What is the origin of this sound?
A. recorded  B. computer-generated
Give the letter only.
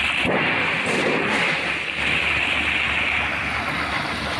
A